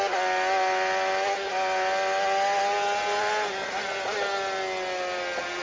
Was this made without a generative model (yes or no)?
yes